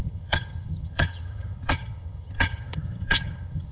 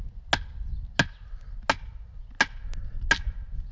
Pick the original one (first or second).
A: second